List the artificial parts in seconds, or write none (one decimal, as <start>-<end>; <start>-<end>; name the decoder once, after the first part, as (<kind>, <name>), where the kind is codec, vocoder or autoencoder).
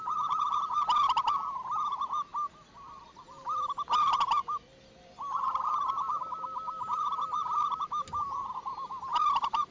none